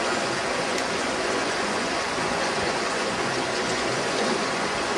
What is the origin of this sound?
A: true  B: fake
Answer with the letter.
B